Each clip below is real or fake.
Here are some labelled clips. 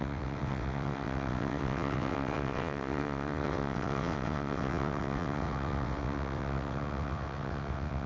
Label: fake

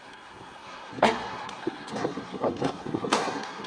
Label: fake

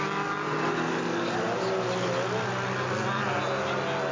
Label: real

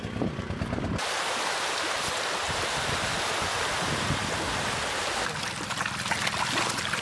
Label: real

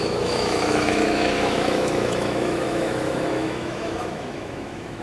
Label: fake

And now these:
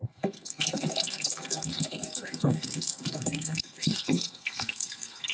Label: fake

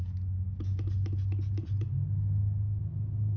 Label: real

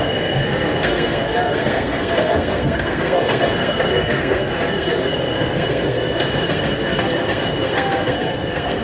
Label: fake